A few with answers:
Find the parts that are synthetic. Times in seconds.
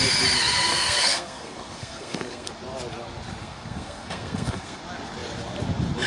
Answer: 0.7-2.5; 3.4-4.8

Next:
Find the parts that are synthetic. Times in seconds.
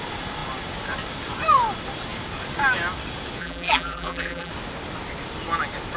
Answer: 3.4-4.5